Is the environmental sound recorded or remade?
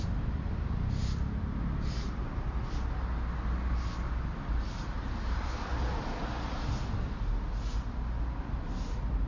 recorded